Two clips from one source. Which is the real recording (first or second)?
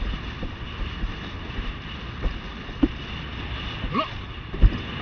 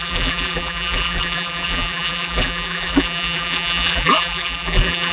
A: first